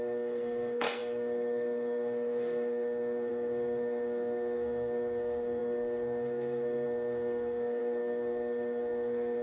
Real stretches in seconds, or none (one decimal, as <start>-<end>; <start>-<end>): none